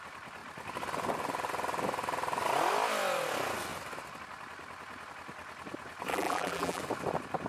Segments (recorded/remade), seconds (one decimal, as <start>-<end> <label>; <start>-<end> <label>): 0.0-6.1 recorded; 6.1-6.8 remade; 6.8-7.5 recorded